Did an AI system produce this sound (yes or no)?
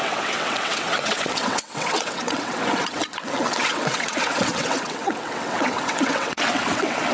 yes